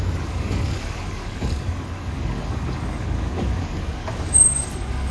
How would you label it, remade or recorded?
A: remade